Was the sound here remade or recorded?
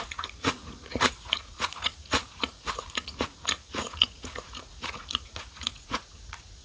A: remade